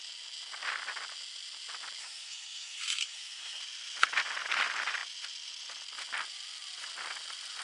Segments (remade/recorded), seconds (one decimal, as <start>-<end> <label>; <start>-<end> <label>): 0.0-2.0 recorded; 2.0-3.6 remade; 3.6-7.6 recorded